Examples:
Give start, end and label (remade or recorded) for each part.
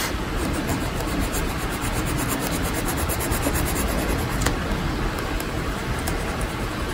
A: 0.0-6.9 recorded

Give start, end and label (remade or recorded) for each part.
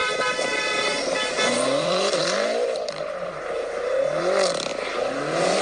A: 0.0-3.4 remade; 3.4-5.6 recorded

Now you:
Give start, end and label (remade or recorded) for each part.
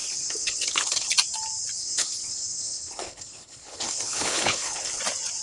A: 0.0-1.1 remade; 1.1-1.8 recorded; 1.8-5.0 remade; 5.0-5.4 recorded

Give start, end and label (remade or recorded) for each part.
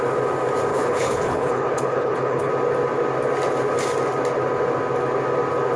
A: 0.0-0.7 recorded; 0.7-2.5 remade; 2.5-5.8 recorded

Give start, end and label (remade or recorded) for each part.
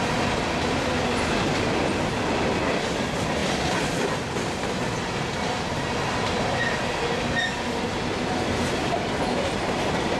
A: 0.0-10.2 recorded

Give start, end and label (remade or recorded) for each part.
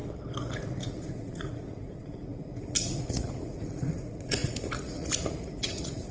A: 0.0-0.5 recorded; 0.5-6.1 remade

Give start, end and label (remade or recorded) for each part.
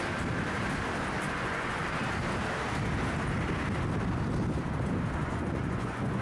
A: 0.0-1.3 recorded; 1.3-1.8 remade; 1.8-5.2 recorded; 5.2-6.2 remade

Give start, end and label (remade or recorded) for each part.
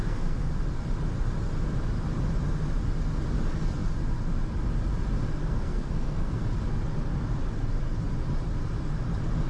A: 0.0-0.5 remade; 0.5-5.4 recorded; 5.4-6.4 remade; 6.4-9.5 recorded